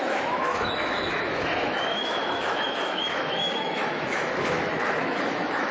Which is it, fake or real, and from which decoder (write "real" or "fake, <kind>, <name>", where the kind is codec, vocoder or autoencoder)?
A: fake, autoencoder, DAC-VAE